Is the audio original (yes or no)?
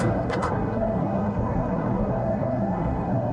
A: no